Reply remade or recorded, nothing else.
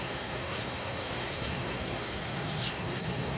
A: remade